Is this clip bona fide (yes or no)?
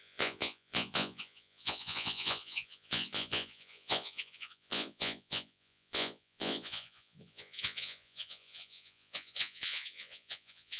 no